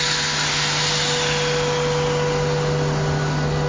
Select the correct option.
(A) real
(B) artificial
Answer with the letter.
A